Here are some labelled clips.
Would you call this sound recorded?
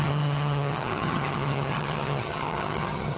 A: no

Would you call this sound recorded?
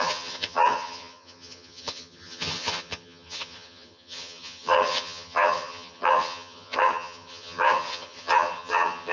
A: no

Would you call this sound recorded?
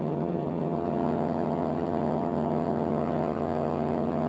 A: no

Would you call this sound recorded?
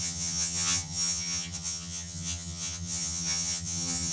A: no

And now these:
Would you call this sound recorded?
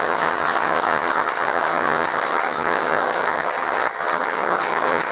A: no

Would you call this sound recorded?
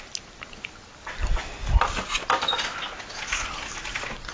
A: yes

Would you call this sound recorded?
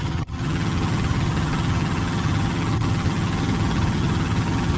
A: no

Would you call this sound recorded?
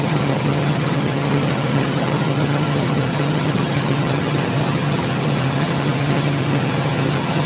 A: no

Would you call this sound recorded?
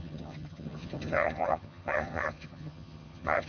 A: no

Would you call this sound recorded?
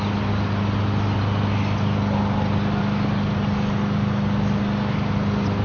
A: yes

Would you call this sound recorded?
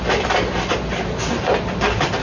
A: yes